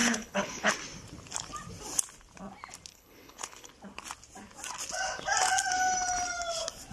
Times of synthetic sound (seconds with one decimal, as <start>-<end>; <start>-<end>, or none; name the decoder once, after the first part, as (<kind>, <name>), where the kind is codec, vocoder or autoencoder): 0.0-0.7 (codec, HILCodec); 2.9-3.7